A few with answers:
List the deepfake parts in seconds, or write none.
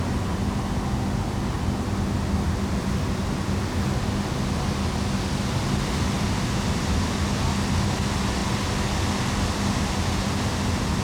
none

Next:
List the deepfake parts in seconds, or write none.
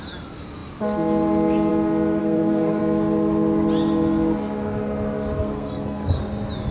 2.2-2.8 (codec, SNAC); 5.4-6.2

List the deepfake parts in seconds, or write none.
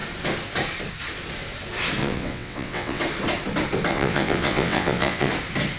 2.0-3.0 (vocoder, WaveNeXt); 3.9-5.3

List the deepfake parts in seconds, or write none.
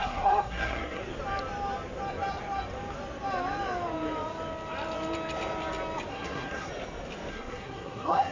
0.0-1.0 (codec, SNAC); 6.1-6.7; 7.3-8.3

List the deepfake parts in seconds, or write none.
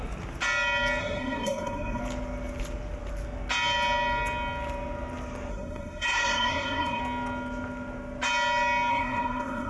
1.0-2.0 (codec, SNAC); 5.5-7.0; 8.9-9.7